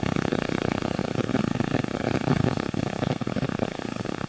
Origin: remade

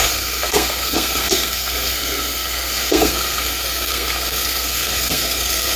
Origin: remade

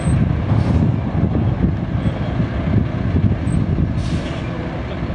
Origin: recorded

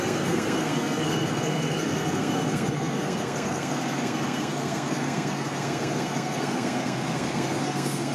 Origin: remade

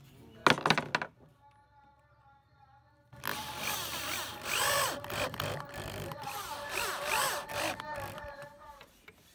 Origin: recorded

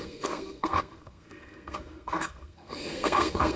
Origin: remade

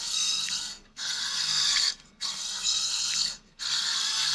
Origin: remade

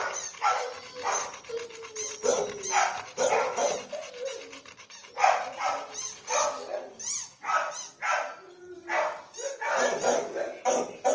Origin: recorded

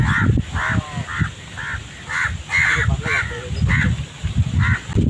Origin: recorded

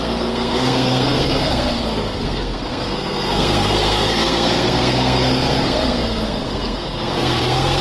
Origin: remade